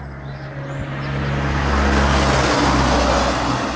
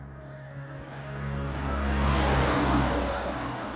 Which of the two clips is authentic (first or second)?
first